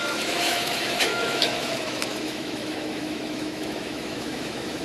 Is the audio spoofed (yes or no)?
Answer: yes